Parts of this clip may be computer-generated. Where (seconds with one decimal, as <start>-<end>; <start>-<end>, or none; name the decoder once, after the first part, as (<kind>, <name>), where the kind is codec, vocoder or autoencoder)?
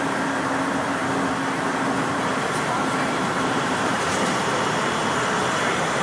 0.0-1.0 (vocoder, BigVGAN v2); 2.0-5.0; 5.6-6.0